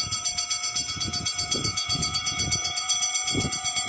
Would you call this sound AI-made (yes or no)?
yes